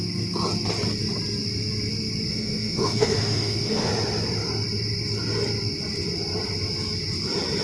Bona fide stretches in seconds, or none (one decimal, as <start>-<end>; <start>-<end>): 0.0-2.3; 3.9-7.6